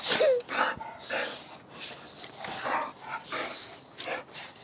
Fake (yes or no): no